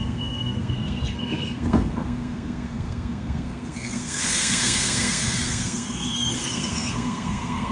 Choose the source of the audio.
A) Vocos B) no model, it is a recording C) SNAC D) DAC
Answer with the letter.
C